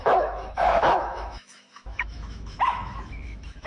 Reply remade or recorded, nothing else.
remade